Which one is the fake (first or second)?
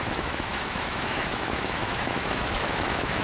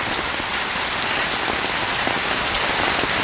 first